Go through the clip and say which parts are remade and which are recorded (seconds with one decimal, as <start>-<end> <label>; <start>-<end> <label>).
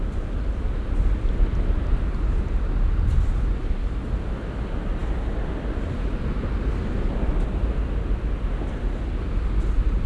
0.0-10.1 recorded